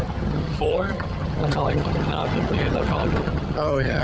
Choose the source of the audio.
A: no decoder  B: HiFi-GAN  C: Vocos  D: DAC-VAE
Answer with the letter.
B